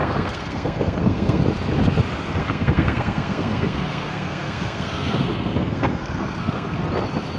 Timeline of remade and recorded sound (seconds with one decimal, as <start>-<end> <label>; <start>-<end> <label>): 0.0-1.4 remade; 1.4-2.4 recorded; 2.4-6.8 remade; 6.8-7.4 recorded